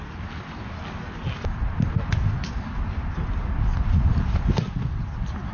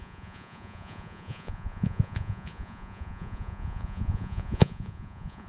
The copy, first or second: second